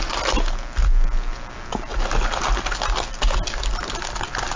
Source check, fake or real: real